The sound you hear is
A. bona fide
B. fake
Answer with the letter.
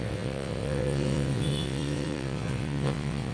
B